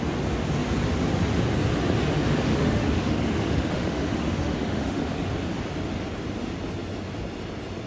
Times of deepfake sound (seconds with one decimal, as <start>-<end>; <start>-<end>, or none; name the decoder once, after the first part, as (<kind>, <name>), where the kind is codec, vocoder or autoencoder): 2.5-5.3 (autoencoder, DAC-VAE)